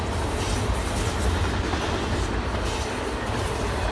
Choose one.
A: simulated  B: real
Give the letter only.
B